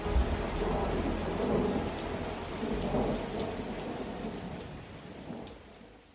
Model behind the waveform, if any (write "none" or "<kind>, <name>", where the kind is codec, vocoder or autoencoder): none